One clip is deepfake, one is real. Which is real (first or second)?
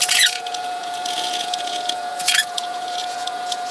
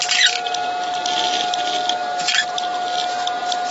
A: second